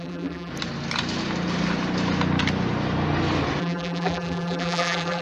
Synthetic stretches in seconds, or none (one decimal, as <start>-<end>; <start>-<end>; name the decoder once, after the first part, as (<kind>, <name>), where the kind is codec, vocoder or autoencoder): 0.0-0.5 (vocoder, BigVGAN v2); 3.6-5.2